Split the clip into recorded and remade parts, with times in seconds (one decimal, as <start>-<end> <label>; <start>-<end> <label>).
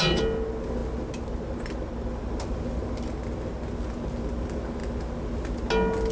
0.0-6.1 recorded